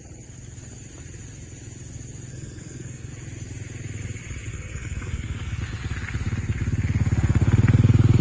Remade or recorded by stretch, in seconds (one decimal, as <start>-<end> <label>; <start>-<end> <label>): 0.0-2.3 recorded; 2.3-3.1 remade; 3.1-4.5 recorded; 4.5-5.6 remade; 5.6-8.2 recorded